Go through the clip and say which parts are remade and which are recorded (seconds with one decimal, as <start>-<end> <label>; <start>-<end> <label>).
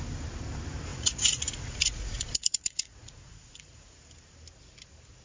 0.0-0.9 recorded; 0.9-4.0 remade; 4.0-5.2 recorded